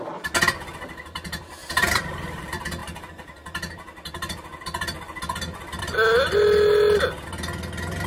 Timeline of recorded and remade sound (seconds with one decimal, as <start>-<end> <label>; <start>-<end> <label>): 0.0-1.6 recorded; 1.6-2.4 remade; 2.4-8.1 recorded